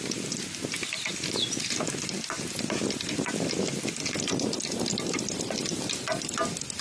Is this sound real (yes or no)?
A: yes